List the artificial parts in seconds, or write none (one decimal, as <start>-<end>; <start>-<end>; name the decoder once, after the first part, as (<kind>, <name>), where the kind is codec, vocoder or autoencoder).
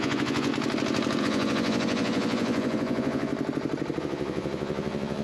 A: 0.0-0.5 (vocoder, Vocos); 1.2-3.3; 4.0-5.2